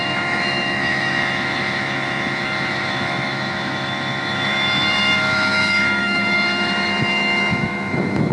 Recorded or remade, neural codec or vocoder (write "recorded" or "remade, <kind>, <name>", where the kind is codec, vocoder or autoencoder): remade, autoencoder, DAC-VAE